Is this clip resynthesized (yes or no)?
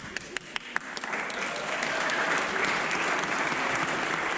no